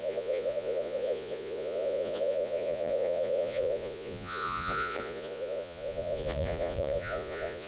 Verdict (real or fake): fake